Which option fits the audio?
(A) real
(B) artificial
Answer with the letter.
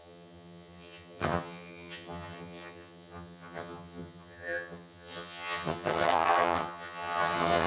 B